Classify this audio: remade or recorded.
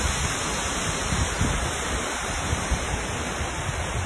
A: remade